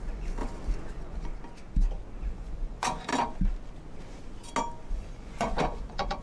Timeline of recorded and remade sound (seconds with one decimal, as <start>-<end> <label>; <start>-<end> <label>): 0.0-0.4 remade; 0.4-0.9 recorded; 0.9-1.3 remade; 1.3-2.2 recorded; 2.2-3.1 remade; 3.1-4.9 recorded; 4.9-6.2 remade